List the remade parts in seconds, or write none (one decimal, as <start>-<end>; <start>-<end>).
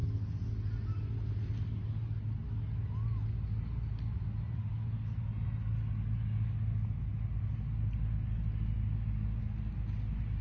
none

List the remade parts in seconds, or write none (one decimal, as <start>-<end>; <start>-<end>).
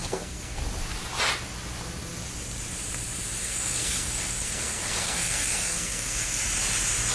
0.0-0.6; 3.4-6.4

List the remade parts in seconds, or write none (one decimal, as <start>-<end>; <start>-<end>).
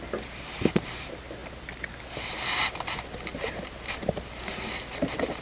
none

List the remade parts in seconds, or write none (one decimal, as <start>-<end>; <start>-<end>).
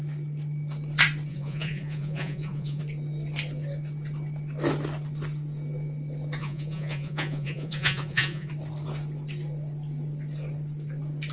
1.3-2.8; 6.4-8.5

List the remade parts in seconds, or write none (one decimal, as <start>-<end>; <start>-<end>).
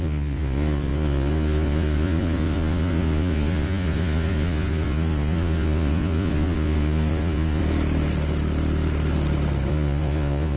0.0-7.6; 9.7-10.6